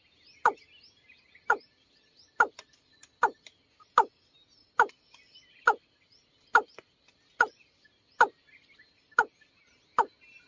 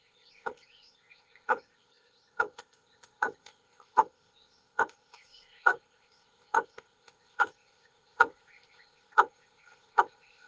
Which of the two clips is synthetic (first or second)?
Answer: second